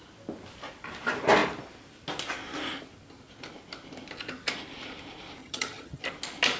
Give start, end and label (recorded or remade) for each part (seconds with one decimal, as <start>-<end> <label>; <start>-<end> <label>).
0.0-5.4 recorded; 5.4-6.0 remade; 6.0-6.6 recorded